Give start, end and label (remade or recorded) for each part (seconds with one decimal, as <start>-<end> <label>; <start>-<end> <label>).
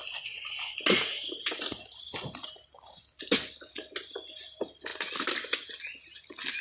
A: 0.0-6.6 recorded